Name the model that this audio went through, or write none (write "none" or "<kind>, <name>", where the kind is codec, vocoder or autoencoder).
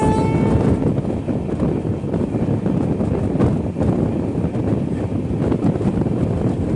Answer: none